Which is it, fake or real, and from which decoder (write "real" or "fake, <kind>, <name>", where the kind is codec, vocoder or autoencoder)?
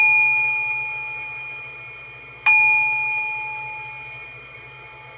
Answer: real